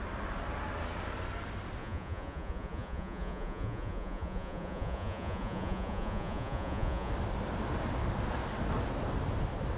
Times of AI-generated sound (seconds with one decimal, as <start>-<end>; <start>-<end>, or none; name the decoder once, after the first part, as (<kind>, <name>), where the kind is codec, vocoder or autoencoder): 1.8-7.1 (vocoder, Vocos)